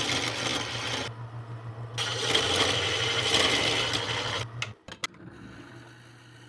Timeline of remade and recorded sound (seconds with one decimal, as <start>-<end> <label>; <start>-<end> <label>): 0.0-6.5 recorded